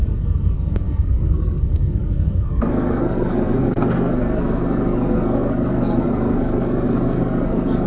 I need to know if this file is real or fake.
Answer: fake